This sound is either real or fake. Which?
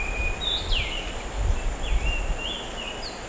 real